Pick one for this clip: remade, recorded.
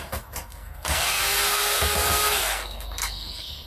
remade